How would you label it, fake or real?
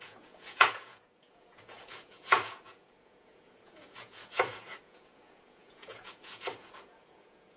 fake